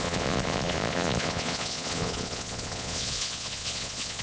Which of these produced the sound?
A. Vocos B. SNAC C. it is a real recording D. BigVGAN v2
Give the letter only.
A